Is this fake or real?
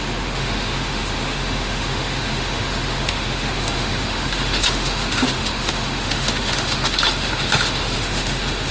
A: fake